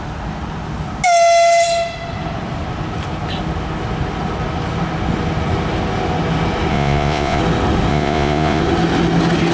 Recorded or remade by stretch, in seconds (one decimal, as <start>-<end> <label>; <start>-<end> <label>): 0.0-6.7 recorded; 6.7-7.4 remade; 7.4-7.9 recorded; 7.9-8.6 remade; 8.6-9.5 recorded